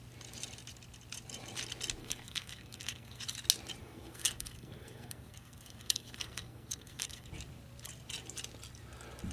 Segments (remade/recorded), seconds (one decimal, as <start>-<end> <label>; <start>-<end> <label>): 0.0-2.0 recorded; 2.0-3.2 remade; 3.2-3.8 recorded; 3.8-7.3 remade; 7.3-9.3 recorded